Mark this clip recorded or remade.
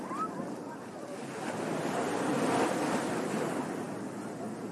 recorded